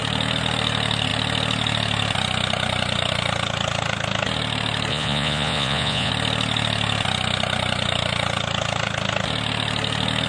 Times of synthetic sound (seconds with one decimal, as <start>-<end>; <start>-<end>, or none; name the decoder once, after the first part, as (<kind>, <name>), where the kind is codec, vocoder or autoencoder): 4.9-6.1 (vocoder, Vocos)